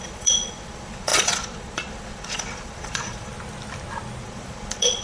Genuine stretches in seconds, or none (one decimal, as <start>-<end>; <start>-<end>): 3.3-4.2